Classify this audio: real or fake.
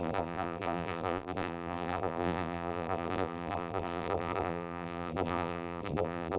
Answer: fake